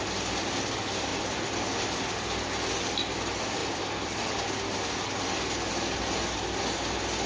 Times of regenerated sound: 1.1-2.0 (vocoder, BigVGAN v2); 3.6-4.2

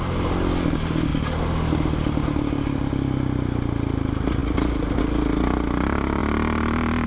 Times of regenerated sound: none

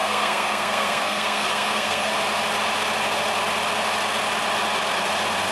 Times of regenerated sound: 0.0-2.1 (codec, SNAC)

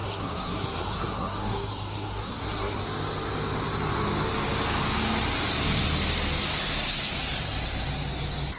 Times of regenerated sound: 0.0-2.8 (codec, SNAC)

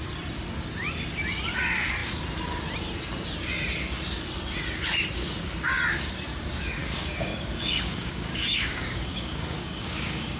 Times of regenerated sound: 6.8-10.4 (codec, DAC)

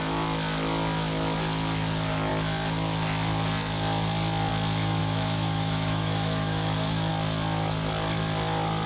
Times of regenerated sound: 5.0-7.1 (autoencoder, DAC-VAE)

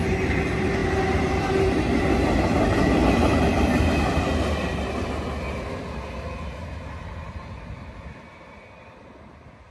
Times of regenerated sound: none

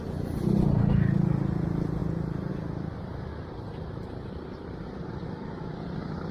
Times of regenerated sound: 3.3-5.1 (vocoder, BigVGAN v2)